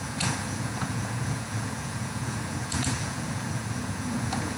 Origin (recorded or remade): remade